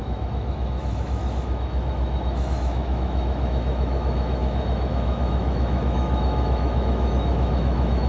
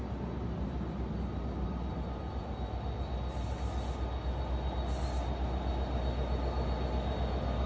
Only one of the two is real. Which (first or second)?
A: second